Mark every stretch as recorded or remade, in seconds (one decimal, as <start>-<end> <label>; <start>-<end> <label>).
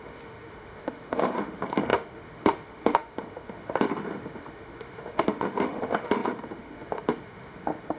0.0-8.0 remade